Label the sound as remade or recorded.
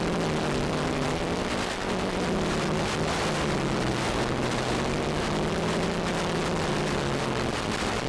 recorded